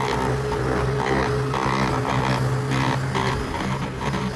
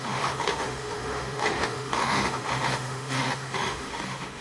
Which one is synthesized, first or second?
second